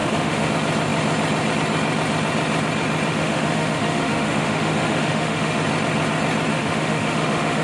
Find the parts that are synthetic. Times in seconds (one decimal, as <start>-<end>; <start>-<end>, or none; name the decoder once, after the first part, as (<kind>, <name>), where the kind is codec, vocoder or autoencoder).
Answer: 0.0-0.5 (autoencoder, DAC-VAE); 3.1-5.6; 6.5-7.6